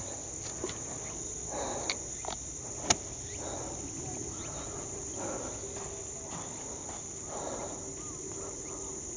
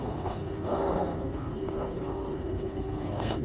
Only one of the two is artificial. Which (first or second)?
second